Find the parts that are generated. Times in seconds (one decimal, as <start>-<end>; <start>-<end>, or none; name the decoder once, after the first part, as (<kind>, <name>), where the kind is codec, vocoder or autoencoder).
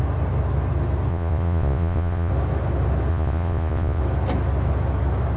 1.1-2.3 (vocoder, Vocos); 3.1-4.0